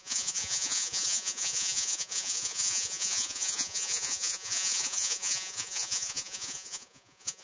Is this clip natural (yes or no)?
no